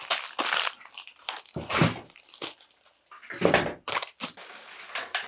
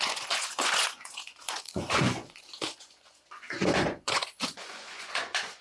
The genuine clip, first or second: first